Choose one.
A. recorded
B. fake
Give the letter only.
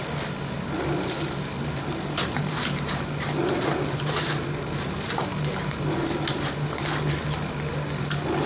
A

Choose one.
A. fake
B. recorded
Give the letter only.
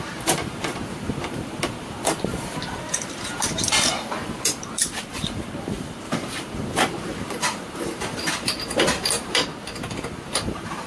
A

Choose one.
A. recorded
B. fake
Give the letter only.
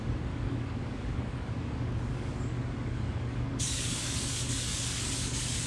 B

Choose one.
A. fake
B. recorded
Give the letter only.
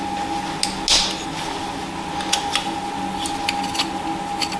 B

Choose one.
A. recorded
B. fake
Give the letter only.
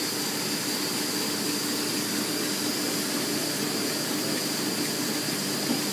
A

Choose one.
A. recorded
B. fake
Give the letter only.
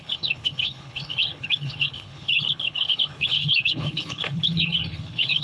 B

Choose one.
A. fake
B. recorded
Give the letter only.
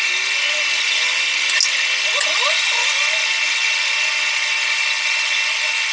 B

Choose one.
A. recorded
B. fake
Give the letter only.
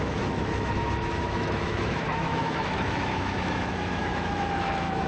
B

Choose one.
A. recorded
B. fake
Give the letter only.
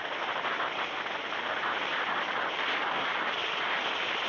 A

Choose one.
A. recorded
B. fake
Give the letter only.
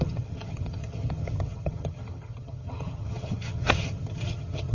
B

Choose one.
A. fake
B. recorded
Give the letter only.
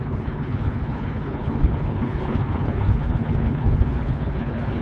A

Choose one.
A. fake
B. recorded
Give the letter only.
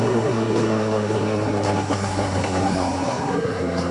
A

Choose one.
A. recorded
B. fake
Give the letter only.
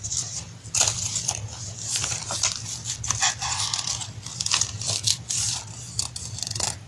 A